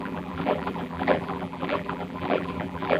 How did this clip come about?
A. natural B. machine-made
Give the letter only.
B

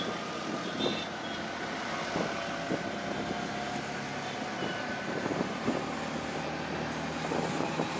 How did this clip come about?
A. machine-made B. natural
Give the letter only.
B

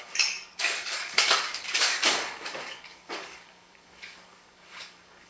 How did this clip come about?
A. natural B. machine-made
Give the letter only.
B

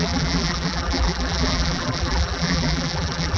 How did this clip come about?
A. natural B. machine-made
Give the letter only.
B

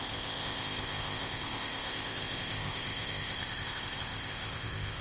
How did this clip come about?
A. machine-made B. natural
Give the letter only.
A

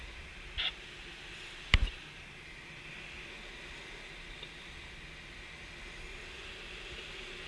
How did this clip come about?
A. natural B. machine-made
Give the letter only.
A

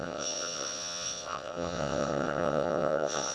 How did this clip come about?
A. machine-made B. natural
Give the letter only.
A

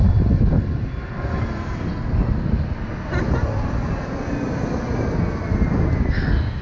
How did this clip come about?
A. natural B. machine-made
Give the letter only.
A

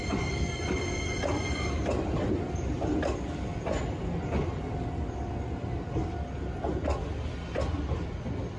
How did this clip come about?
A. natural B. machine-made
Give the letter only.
A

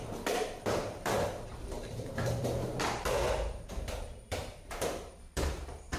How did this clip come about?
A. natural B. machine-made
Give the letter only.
B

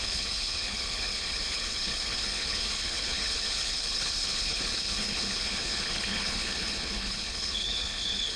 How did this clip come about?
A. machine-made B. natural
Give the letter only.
A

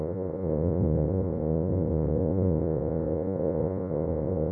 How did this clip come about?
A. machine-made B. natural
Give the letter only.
A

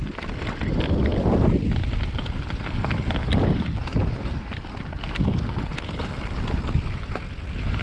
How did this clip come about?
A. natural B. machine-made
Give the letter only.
A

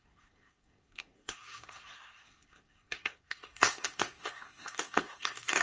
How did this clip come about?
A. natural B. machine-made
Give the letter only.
B